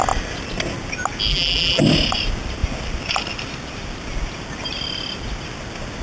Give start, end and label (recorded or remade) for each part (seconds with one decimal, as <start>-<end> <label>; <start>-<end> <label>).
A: 0.0-1.3 recorded; 1.3-1.8 remade; 1.8-6.0 recorded